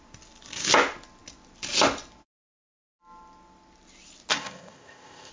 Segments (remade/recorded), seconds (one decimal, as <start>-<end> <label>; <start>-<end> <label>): 0.0-4.3 recorded; 4.3-5.3 remade